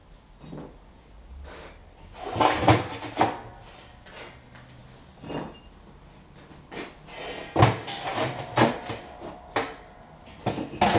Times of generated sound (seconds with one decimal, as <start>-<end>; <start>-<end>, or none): 0.0-1.3